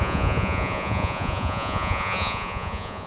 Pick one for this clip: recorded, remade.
remade